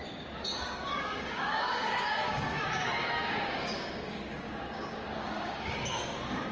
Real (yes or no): no